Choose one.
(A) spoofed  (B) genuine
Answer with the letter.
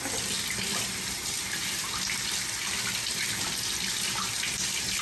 B